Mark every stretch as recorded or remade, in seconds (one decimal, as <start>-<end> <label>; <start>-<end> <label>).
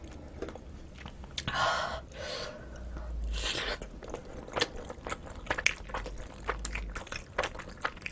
0.0-8.1 recorded